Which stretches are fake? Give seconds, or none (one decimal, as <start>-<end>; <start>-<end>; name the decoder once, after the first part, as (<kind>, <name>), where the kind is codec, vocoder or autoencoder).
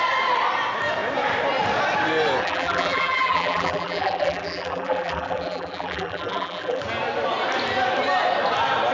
2.4-6.8 (vocoder, BigVGAN v2)